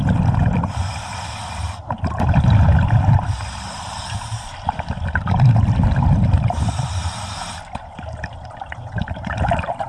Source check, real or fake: real